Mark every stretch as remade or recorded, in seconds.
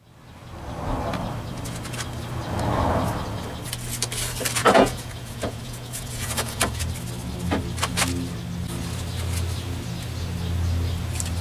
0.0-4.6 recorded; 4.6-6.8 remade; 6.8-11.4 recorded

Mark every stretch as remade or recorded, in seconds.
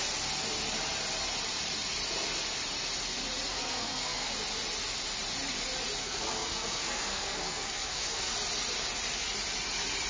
0.0-3.5 recorded; 3.5-4.3 remade; 4.3-6.0 recorded; 6.0-8.3 remade; 8.3-10.1 recorded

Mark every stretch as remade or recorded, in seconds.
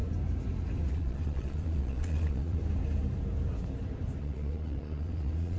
0.0-0.9 recorded; 0.9-2.6 remade; 2.6-4.2 recorded; 4.2-5.6 remade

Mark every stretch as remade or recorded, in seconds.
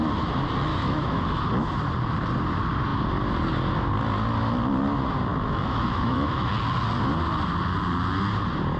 0.0-0.7 recorded; 0.7-1.4 remade; 1.4-5.3 recorded; 5.3-6.5 remade; 6.5-8.8 recorded